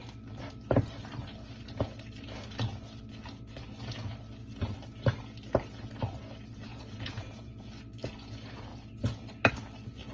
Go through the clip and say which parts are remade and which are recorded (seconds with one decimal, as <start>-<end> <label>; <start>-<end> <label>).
0.0-6.7 recorded; 6.7-7.7 remade; 7.7-10.1 recorded